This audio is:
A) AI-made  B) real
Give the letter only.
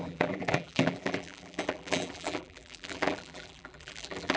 A